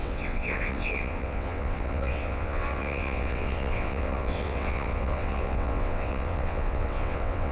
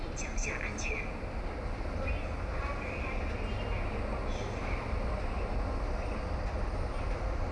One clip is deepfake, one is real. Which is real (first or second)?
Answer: second